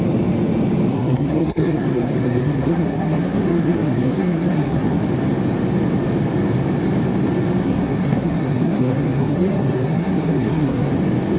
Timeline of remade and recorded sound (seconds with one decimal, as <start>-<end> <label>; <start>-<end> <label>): 0.0-0.9 recorded; 0.9-5.0 remade; 5.0-7.6 recorded; 7.6-10.9 remade; 10.9-11.4 recorded